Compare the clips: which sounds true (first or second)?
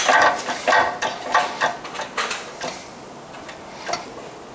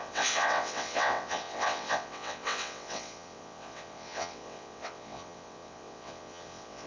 first